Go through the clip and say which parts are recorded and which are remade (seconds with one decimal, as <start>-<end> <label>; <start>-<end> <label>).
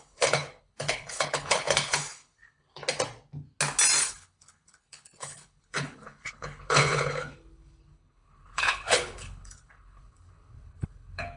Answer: 0.0-2.8 remade; 2.8-4.0 recorded; 4.0-11.4 remade